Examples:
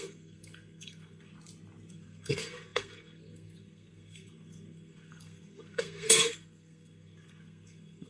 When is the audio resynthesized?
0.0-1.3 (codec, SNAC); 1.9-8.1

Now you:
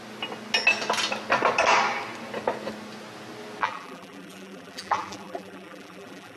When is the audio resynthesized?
3.6-6.4 (vocoder, BigVGAN v2)